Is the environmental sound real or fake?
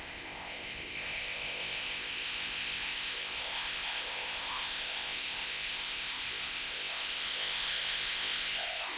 fake